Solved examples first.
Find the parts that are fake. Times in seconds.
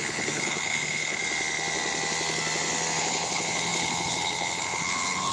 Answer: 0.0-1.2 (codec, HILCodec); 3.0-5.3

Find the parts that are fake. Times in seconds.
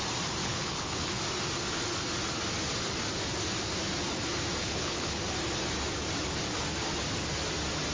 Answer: 0.4-1.2 (codec, HILCodec); 4.6-5.2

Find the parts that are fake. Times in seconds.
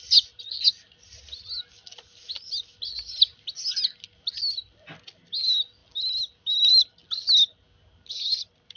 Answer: none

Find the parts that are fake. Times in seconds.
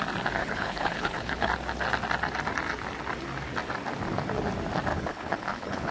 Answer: 0.4-1.5 (codec, HILCodec); 4.9-5.9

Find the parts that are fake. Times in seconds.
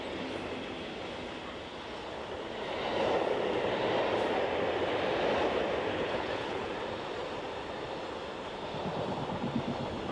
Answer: 5.9-6.7 (codec, HILCodec)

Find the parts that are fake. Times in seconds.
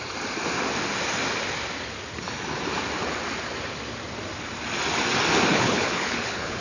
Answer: 5.5-6.6 (codec, HILCodec)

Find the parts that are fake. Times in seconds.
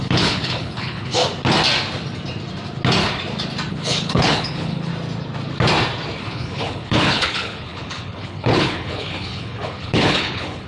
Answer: 0.0-1.2 (codec, HILCodec); 3.7-4.9; 6.2-10.7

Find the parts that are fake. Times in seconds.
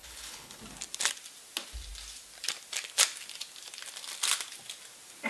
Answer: 0.0-0.6 (codec, HILCodec)